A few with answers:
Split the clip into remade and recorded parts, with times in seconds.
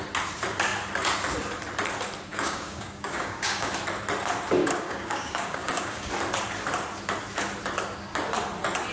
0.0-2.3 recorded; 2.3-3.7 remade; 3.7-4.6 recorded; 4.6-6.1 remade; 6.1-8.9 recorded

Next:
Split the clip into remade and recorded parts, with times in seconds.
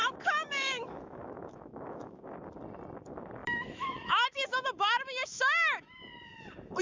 0.0-2.2 remade; 2.2-3.4 recorded; 3.4-6.0 remade; 6.0-6.8 recorded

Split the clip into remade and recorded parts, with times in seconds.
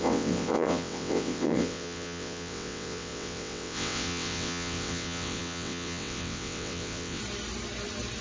0.0-7.2 remade; 7.2-8.2 recorded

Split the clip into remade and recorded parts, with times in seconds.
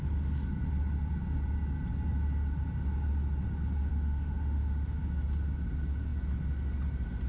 0.0-3.9 recorded; 3.9-5.0 remade; 5.0-7.3 recorded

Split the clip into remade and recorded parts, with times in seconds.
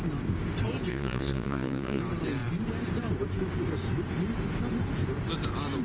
0.0-0.9 recorded; 0.9-2.0 remade; 2.0-5.8 recorded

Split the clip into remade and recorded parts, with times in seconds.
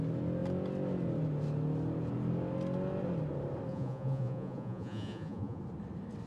0.0-3.7 recorded; 3.7-5.6 remade; 5.6-6.3 recorded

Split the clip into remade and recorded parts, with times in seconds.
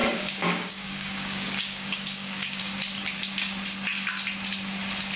0.0-2.6 remade; 2.6-5.2 recorded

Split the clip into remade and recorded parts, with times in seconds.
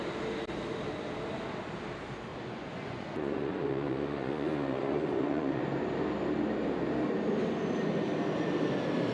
0.0-2.3 recorded; 2.3-5.6 remade; 5.6-9.1 recorded